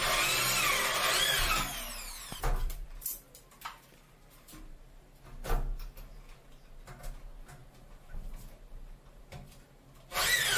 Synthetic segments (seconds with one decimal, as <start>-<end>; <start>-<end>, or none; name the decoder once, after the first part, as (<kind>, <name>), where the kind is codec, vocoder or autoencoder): 2.6-5.2 (vocoder, BigVGAN v2); 7.6-9.2